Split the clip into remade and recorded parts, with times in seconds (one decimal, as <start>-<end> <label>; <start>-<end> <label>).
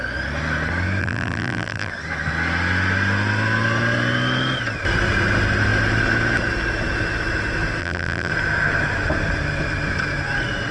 0.0-1.0 recorded; 1.0-1.9 remade; 1.9-7.8 recorded; 7.8-8.3 remade; 8.3-10.7 recorded